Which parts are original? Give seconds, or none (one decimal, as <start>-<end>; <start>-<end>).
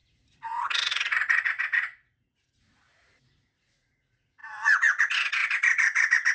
none